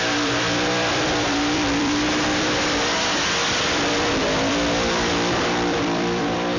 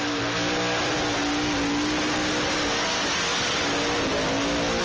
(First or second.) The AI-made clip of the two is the first